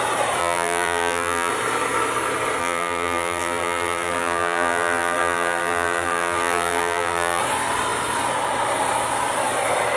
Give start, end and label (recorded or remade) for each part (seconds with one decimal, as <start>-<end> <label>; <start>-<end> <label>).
0.0-0.4 recorded; 0.4-1.5 remade; 1.5-2.6 recorded; 2.6-7.4 remade; 7.4-10.0 recorded